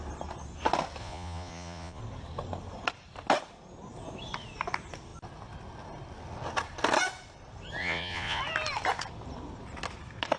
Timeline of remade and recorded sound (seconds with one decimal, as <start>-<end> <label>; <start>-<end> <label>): 0.0-1.0 recorded; 1.0-2.0 remade; 2.0-7.8 recorded; 7.8-8.4 remade; 8.4-10.4 recorded